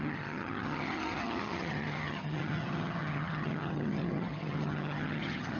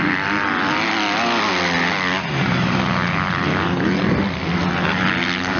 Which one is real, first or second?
second